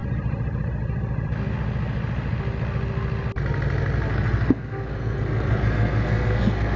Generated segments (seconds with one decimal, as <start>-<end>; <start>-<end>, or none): 4.1-6.8